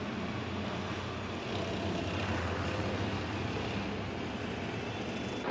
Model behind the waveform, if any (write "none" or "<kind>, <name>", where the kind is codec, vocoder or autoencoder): none